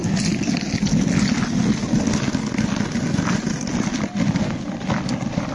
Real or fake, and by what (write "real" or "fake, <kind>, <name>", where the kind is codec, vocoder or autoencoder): real